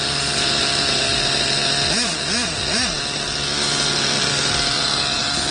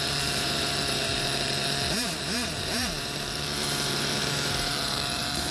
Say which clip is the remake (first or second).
second